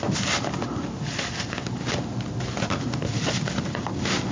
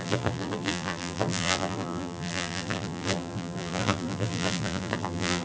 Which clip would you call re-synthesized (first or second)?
second